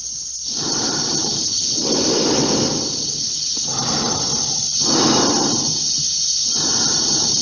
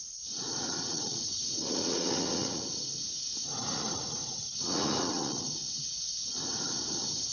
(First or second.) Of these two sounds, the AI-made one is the second